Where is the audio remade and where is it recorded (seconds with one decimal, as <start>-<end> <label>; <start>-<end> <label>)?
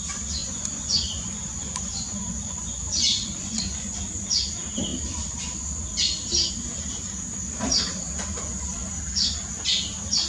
0.0-0.4 recorded; 0.4-4.0 remade; 4.0-10.3 recorded